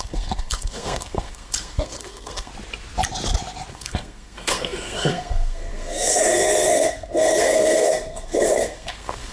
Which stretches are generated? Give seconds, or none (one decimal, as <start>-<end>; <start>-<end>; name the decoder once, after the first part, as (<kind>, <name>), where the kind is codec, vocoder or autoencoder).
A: 0.0-2.5 (codec, SNAC); 3.7-9.3